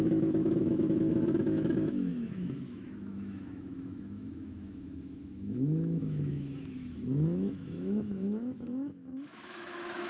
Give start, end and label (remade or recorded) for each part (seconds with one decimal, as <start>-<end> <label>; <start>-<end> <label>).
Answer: 0.0-10.1 remade